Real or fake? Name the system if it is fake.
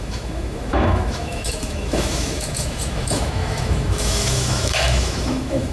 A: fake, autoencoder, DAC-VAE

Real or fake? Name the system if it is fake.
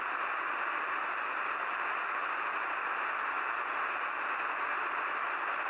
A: real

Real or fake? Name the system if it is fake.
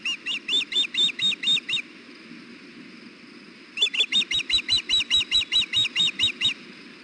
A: real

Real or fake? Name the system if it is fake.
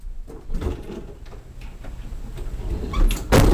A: real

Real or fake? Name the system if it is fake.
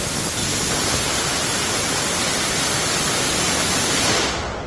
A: real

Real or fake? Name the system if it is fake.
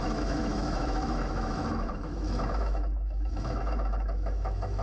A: fake, autoencoder, DAC-VAE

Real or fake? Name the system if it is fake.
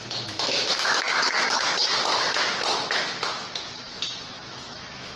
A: fake, autoencoder, DAC-VAE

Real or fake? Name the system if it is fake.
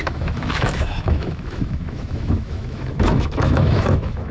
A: fake, autoencoder, DAC-VAE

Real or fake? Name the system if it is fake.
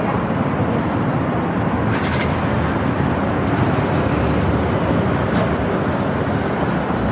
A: real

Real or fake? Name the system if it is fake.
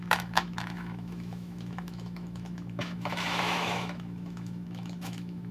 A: fake, autoencoder, DAC-VAE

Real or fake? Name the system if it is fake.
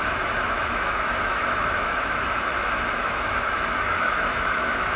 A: fake, autoencoder, DAC-VAE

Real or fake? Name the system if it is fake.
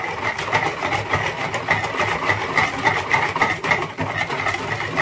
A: real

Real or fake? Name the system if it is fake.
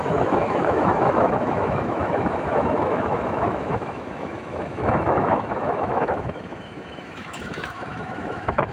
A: fake, autoencoder, DAC-VAE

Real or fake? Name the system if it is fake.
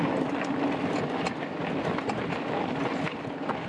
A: real